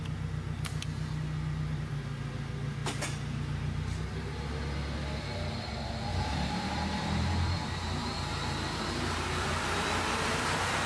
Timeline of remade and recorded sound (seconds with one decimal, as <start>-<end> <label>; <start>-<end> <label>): 0.0-6.1 recorded; 6.1-10.9 remade

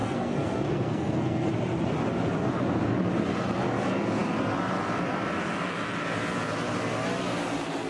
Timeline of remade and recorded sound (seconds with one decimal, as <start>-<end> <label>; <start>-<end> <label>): 0.0-1.5 remade; 1.5-7.9 recorded

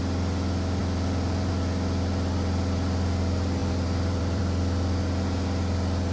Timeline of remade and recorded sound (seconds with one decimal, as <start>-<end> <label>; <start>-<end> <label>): 0.0-0.8 recorded; 0.8-1.5 remade; 1.5-3.6 recorded; 3.6-4.4 remade; 4.4-6.1 recorded

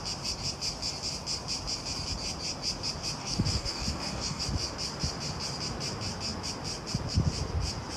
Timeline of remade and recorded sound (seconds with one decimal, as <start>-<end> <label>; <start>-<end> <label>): 0.0-3.2 recorded; 3.2-4.4 remade; 4.4-8.0 recorded